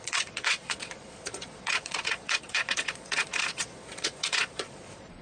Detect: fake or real fake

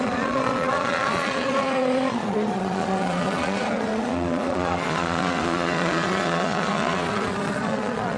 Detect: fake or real fake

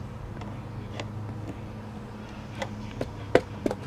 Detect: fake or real real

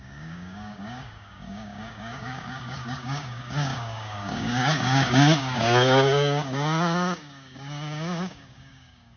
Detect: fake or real fake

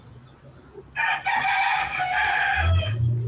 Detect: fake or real real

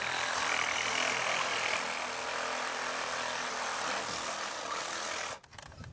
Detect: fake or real real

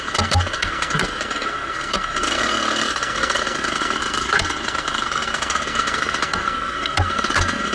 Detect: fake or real fake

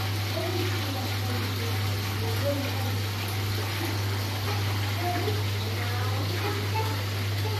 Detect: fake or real real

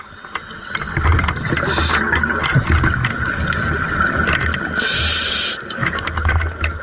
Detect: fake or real real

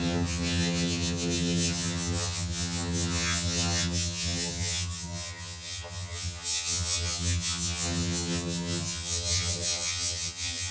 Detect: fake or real fake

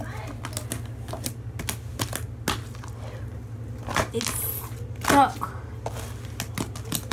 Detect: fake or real real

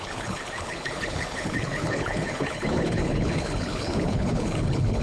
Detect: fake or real fake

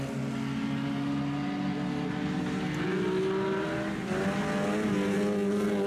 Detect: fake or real real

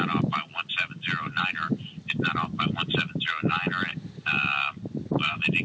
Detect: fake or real real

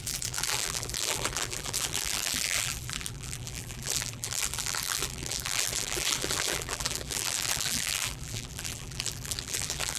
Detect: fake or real fake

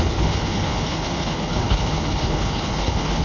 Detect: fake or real fake